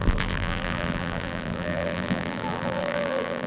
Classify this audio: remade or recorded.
remade